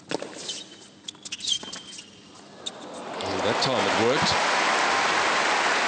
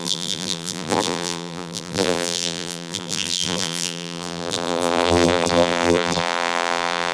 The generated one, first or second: second